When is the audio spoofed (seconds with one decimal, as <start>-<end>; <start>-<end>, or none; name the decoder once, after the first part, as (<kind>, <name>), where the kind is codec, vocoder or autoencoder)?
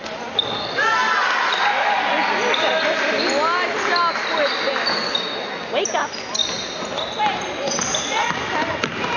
none